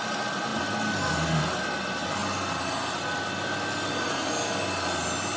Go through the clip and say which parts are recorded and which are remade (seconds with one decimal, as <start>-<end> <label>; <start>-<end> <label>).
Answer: 0.0-5.4 recorded